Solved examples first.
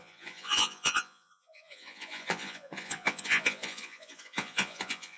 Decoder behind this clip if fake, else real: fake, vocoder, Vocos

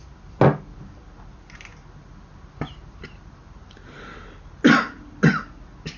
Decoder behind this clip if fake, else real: real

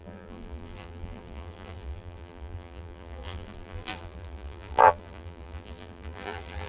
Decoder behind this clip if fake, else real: fake, vocoder, BigVGAN v2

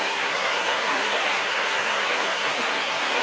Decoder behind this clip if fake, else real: fake, codec, SNAC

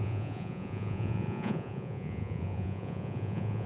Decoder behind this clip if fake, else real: fake, vocoder, Vocos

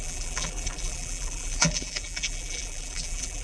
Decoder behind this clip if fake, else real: fake, vocoder, BigVGAN v2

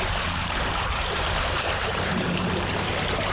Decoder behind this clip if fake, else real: fake, vocoder, BigVGAN v2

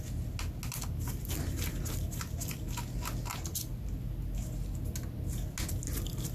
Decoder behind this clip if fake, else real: real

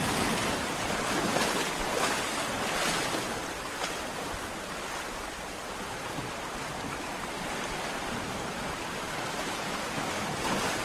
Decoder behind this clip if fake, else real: real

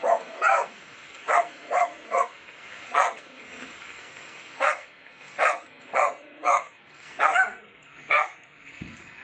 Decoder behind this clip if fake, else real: fake, codec, SNAC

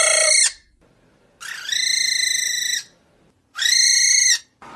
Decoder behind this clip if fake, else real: real